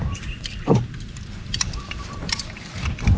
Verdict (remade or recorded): remade